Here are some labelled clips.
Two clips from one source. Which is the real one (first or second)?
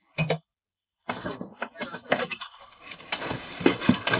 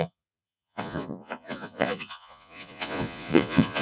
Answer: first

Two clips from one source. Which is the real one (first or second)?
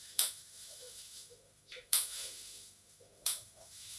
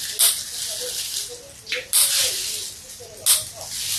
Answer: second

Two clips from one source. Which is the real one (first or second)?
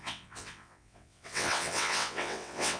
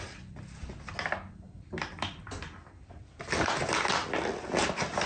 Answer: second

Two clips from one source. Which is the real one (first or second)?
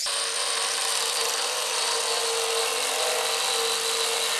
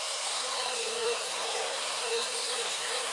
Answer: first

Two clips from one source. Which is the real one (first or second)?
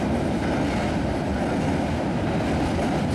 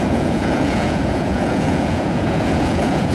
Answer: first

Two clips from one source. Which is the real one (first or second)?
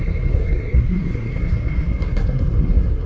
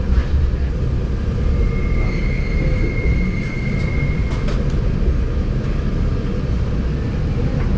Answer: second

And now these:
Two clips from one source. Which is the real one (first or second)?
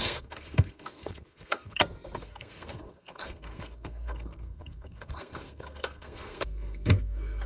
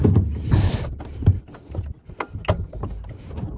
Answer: second